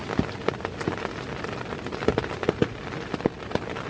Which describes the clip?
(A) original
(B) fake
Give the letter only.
A